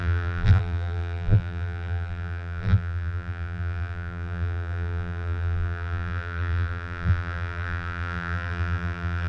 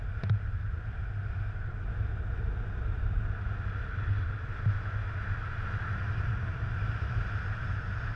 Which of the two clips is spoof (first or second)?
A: first